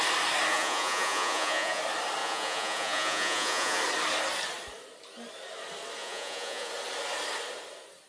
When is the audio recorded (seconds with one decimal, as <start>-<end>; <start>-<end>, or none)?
0.0-0.5; 1.8-2.2; 3.8-6.0; 6.7-8.1